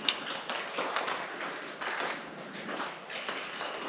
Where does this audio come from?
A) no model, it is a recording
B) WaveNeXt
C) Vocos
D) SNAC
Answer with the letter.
A